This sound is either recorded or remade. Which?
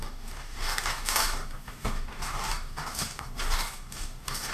remade